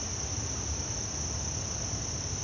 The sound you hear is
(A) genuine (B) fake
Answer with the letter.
A